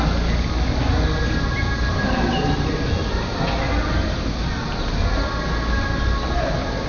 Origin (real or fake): real